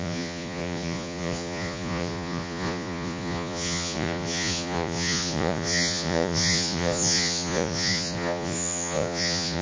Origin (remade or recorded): remade